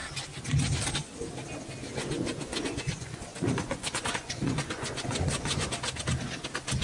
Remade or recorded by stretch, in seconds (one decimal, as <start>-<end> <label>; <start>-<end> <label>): 0.0-1.9 recorded; 1.9-5.7 remade; 5.7-6.8 recorded